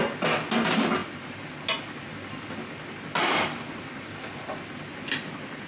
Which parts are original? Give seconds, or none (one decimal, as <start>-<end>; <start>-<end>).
0.0-5.7